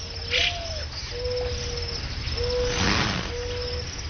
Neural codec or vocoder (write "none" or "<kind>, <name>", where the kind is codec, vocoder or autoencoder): none